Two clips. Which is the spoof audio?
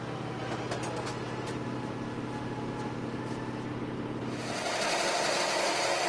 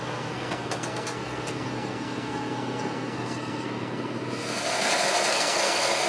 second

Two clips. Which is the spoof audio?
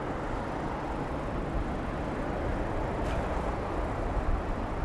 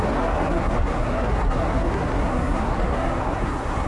second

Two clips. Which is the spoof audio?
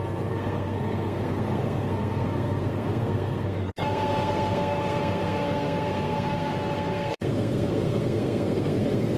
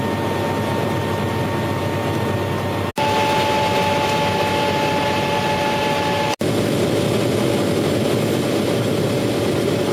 first